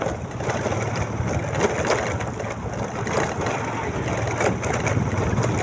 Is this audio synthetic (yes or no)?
no